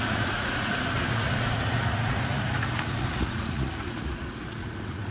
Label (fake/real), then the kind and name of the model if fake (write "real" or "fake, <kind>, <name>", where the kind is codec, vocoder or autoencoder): fake, vocoder, Vocos